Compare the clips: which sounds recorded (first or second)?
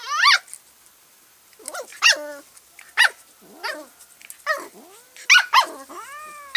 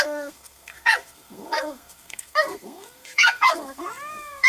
first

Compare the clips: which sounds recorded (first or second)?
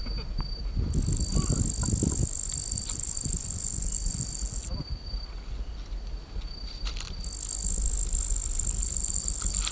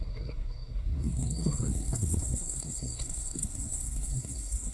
first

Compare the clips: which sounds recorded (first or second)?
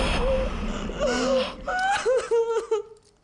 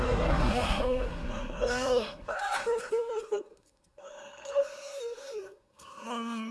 first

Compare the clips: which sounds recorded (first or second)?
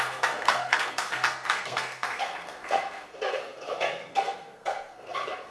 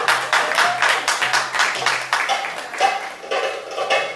second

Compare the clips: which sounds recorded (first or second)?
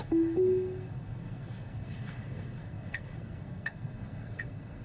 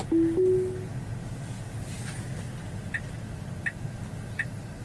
second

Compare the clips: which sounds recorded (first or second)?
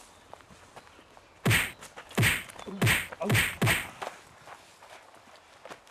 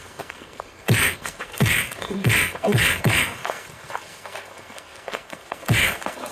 first